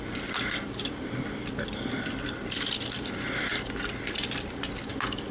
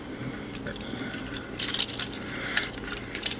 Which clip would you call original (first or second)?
second